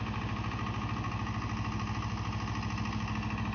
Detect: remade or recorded recorded